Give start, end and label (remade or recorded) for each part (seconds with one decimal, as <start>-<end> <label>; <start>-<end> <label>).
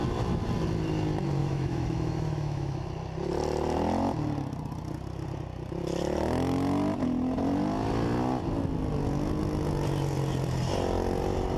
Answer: 0.0-1.4 recorded; 1.4-2.9 remade; 2.9-11.6 recorded